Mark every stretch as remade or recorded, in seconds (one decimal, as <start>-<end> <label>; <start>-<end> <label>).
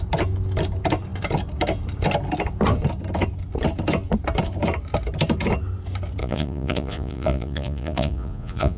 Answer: 0.0-6.2 recorded; 6.2-8.8 remade